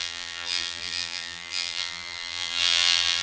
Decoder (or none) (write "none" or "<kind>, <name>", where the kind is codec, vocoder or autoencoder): vocoder, BigVGAN v2